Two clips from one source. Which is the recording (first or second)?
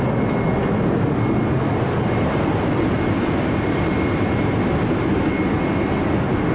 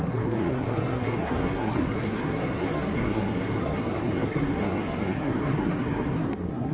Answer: first